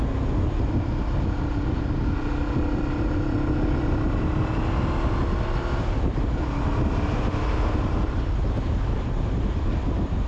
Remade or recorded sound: recorded